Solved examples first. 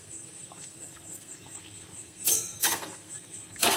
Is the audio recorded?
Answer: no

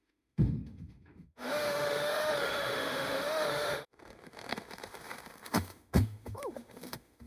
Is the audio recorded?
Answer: no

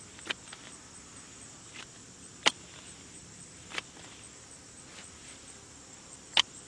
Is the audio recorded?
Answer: yes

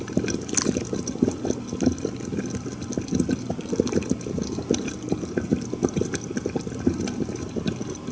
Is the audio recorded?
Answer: yes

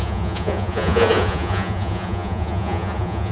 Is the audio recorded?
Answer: no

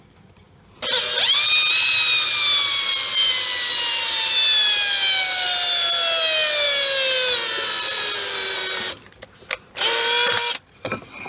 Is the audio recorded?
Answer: yes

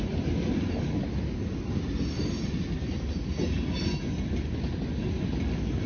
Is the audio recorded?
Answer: yes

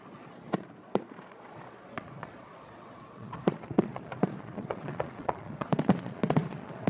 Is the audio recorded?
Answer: no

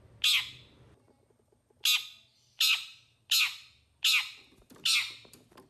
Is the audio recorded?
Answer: yes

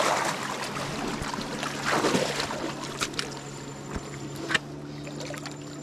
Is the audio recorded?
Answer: yes